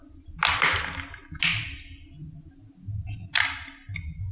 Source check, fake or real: real